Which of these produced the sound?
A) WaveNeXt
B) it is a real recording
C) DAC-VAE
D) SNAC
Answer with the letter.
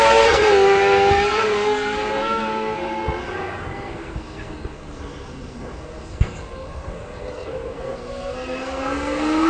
D